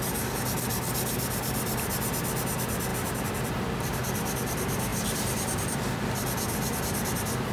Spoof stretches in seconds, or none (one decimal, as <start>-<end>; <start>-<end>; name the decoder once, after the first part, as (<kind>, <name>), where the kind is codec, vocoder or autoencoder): 4.9-6.8 (vocoder, BigVGAN v2)